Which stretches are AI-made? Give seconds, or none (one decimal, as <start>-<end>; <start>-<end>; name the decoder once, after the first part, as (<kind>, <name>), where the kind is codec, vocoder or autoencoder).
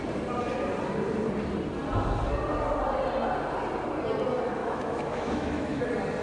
4.6-5.8 (autoencoder, DAC-VAE)